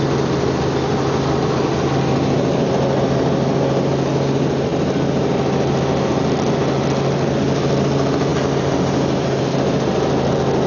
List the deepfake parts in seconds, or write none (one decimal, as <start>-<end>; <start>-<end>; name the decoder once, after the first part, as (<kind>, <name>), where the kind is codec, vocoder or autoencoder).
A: none

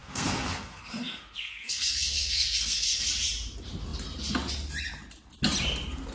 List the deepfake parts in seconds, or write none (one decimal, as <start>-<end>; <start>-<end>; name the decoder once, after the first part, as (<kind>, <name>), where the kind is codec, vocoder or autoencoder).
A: 0.0-3.1 (codec, SNAC)

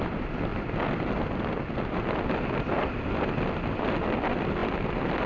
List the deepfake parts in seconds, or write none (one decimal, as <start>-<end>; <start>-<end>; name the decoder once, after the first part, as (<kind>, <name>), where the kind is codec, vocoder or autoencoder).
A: none

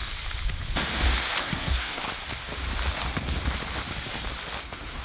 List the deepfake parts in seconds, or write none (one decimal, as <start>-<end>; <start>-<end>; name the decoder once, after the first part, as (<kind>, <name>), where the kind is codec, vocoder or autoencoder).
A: 1.4-2.0 (codec, SNAC); 4.6-5.0

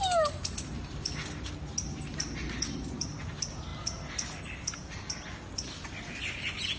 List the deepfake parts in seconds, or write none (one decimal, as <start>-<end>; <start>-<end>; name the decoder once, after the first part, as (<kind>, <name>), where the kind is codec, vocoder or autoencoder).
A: none

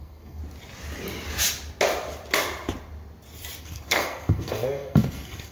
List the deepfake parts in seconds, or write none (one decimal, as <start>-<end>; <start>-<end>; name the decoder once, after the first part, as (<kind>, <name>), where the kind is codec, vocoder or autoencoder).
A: 0.0-0.4 (codec, SNAC); 3.6-5.5

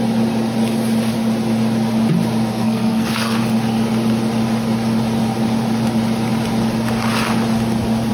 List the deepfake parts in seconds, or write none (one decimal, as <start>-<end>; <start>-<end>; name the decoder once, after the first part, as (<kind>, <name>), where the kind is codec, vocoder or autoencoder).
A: 2.5-3.4 (codec, SNAC)